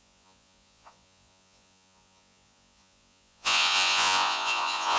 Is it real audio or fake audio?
fake